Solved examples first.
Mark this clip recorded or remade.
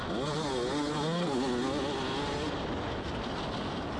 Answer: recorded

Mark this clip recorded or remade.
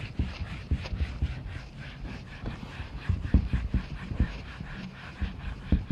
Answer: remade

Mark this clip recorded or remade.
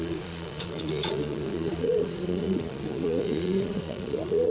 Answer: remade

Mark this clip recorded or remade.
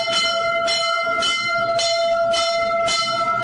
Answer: recorded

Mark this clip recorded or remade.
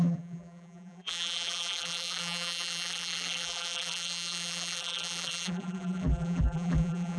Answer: remade